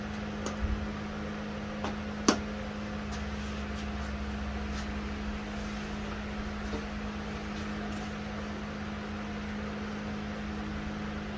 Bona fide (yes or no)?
yes